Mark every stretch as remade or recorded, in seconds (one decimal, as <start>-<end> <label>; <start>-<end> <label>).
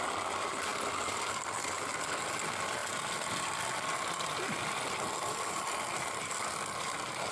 0.0-7.3 recorded